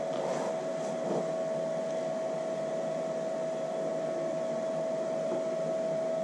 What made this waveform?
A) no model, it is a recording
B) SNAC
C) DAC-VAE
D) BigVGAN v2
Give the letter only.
A